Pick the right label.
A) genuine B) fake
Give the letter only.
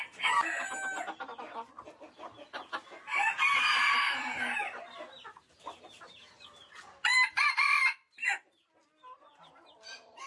A